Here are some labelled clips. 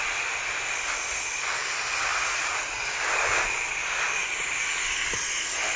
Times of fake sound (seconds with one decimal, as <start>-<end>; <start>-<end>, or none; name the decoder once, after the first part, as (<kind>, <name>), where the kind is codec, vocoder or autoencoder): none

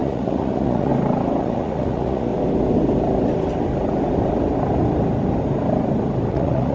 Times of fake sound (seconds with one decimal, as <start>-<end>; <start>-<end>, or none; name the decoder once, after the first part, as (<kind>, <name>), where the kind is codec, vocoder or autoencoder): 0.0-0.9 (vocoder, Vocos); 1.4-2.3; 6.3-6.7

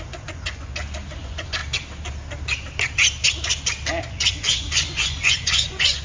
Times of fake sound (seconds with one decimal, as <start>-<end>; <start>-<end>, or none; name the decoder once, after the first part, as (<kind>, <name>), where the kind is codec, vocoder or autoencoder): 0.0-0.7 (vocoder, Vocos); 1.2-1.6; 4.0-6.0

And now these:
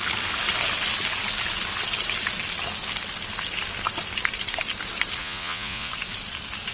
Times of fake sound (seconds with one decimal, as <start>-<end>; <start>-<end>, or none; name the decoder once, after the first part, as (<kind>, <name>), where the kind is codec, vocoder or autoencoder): 5.2-5.9 (vocoder, Vocos)

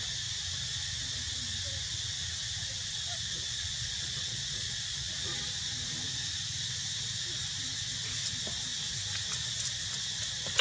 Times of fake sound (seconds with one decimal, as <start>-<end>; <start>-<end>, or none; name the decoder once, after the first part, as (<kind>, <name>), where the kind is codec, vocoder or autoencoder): 3.5-5.5 (vocoder, Vocos)

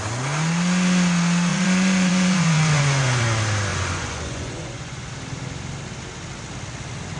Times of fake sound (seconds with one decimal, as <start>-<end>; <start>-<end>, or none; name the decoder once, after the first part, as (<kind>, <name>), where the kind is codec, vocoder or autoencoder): 1.5-3.2 (vocoder, Vocos); 3.7-5.1

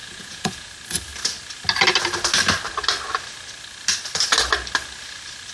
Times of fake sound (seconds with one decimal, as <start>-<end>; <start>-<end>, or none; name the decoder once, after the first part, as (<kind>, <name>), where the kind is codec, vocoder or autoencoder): 0.0-0.7 (vocoder, Vocos)

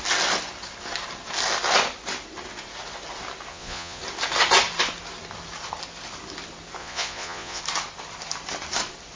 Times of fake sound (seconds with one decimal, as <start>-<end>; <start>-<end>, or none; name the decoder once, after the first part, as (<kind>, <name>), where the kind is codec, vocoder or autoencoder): 3.5-4.0 (vocoder, Vocos); 6.8-7.6